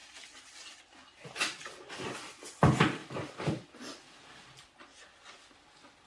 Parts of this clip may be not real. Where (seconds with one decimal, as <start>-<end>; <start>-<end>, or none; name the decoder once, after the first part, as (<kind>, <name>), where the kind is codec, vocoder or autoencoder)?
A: 0.0-0.8 (vocoder, BigVGAN v2); 3.0-4.8